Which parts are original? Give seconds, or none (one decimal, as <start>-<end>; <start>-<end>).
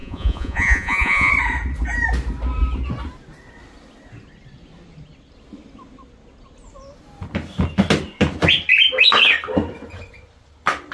1.3-10.9